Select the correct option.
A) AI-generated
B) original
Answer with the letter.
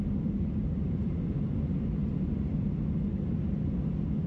B